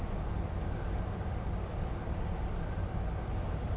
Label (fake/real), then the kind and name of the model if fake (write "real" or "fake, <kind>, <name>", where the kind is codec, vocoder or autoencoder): fake, vocoder, BigVGAN v2